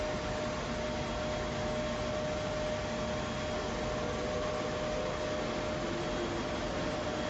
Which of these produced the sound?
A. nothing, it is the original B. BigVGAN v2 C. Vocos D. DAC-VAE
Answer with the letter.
A